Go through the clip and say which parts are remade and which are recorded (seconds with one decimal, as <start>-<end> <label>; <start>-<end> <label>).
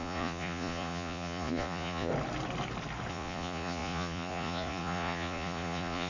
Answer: 0.0-2.1 remade; 2.1-3.1 recorded; 3.1-6.1 remade